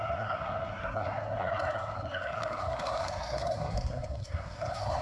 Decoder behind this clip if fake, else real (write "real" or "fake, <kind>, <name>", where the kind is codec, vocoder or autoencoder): fake, codec, SNAC